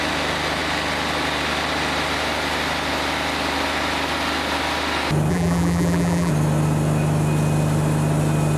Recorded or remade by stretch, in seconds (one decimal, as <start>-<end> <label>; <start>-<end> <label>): 0.0-5.3 recorded; 5.3-6.3 remade; 6.3-8.6 recorded